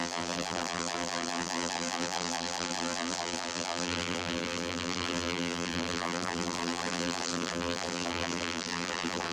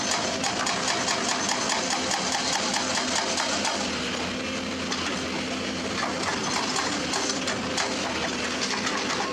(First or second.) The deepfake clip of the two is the first